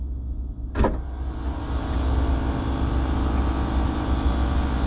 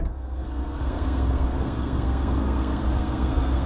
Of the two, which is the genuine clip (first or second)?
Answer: first